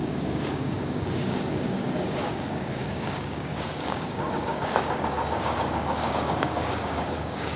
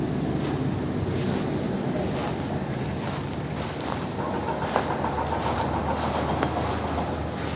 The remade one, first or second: first